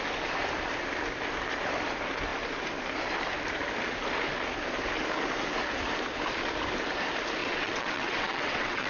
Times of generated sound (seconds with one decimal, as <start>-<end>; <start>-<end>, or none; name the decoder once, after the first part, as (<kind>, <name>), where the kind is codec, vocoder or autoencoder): 7.4-8.9 (vocoder, WaveNeXt)